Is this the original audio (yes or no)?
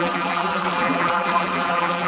no